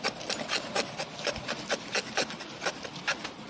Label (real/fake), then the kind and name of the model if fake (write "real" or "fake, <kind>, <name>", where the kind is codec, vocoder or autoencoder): real